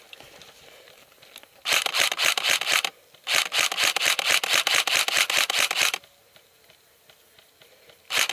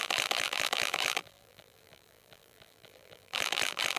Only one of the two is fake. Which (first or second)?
second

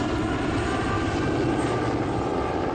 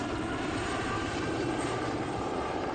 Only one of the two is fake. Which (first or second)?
second